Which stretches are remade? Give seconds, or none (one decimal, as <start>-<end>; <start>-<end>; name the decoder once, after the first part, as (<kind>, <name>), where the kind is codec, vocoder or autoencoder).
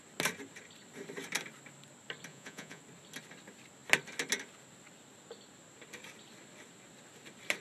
2.3-2.8 (vocoder, Vocos)